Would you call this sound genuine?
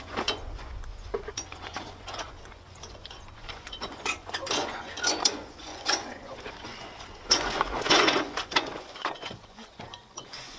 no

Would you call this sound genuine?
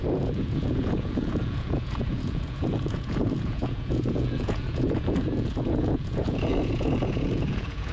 no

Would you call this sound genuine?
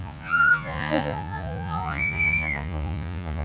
no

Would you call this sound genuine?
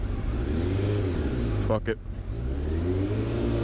yes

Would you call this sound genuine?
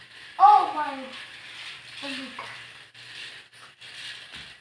yes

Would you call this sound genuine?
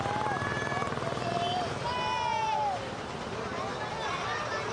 yes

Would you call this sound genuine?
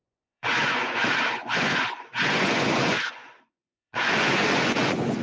no